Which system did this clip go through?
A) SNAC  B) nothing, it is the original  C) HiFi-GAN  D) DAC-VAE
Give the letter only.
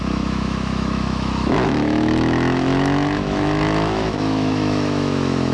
D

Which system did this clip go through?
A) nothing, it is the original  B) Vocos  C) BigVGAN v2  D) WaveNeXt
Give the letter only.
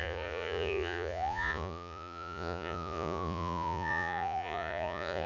B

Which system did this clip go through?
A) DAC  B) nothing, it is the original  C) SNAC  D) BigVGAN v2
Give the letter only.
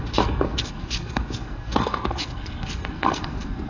C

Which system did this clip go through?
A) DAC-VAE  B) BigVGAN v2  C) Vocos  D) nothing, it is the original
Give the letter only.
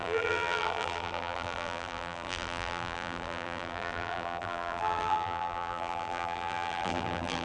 B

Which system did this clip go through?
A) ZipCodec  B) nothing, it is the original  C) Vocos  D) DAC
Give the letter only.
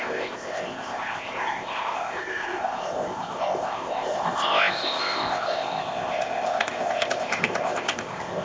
A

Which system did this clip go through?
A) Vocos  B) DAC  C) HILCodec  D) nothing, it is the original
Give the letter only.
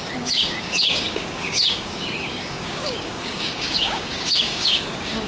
B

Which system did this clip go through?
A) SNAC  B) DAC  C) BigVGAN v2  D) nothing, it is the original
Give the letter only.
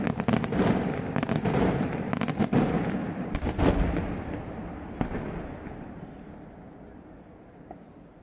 D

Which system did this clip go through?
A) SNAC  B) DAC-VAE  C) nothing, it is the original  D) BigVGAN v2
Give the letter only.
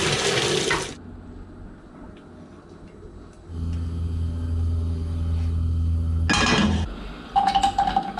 C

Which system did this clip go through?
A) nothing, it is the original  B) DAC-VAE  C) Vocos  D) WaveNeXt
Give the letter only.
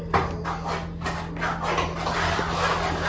A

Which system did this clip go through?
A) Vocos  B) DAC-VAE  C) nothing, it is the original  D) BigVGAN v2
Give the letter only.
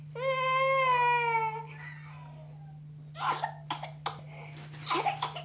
C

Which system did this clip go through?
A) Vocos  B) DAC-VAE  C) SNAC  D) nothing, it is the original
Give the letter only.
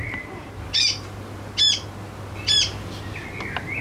D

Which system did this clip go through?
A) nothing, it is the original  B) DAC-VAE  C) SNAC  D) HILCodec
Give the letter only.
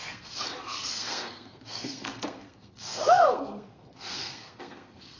C